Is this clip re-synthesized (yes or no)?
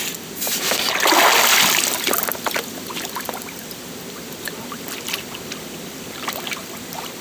no